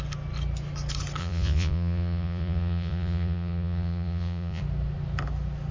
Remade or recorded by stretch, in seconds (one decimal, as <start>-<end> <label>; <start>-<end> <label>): 0.0-1.2 recorded; 1.2-4.6 remade; 4.6-5.7 recorded